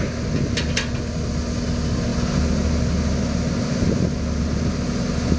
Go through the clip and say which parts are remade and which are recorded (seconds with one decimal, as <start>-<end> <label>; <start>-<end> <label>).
0.0-5.4 recorded